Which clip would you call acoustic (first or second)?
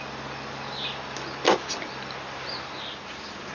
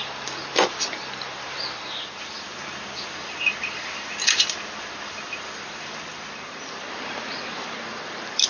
first